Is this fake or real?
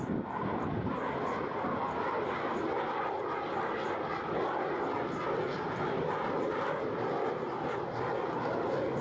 real